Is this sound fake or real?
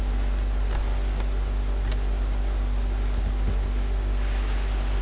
real